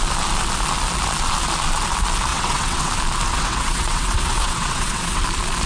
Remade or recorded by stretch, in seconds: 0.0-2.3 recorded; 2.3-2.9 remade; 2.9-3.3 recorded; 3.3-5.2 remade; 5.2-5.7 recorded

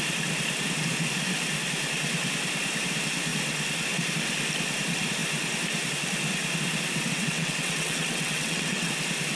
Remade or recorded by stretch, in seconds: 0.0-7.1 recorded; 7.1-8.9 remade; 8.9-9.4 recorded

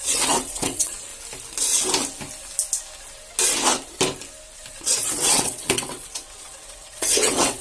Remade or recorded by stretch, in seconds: 0.0-1.1 remade; 1.1-4.7 recorded; 4.7-7.6 remade

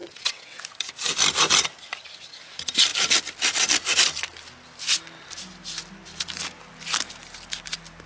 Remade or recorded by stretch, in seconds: 0.0-0.6 remade; 0.6-8.1 recorded

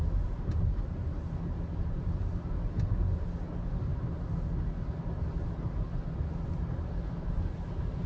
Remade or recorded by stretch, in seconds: 0.0-8.1 recorded